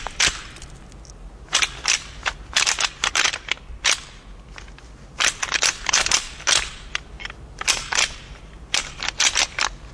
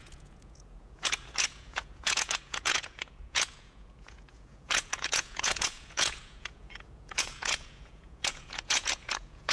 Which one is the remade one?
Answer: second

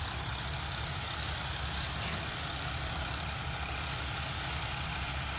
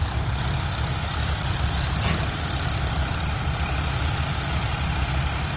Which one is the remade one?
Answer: second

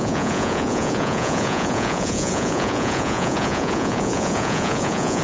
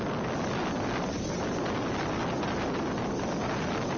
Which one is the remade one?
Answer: first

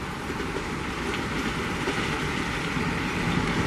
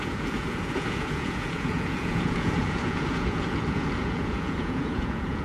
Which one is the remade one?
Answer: second